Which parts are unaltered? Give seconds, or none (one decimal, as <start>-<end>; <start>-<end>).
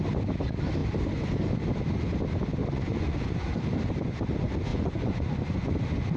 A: 0.0-2.6; 3.3-4.7; 5.7-6.2